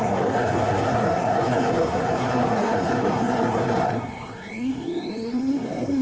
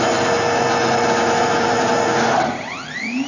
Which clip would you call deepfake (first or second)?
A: first